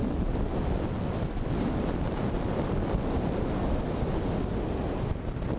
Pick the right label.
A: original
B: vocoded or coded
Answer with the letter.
B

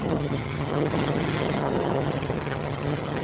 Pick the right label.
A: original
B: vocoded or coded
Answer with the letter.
B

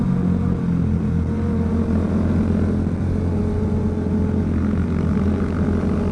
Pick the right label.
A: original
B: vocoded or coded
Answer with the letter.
A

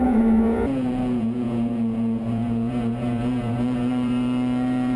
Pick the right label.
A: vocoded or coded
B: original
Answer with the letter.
A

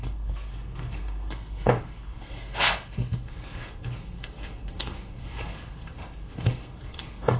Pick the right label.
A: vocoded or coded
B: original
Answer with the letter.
A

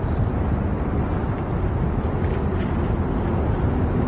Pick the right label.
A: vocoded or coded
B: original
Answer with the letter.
B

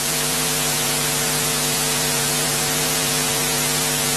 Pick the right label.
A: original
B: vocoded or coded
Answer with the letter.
B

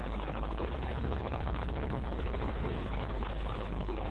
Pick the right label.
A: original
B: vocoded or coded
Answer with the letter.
B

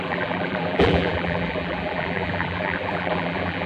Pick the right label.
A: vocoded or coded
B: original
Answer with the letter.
A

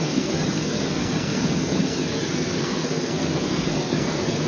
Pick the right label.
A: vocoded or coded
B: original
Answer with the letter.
A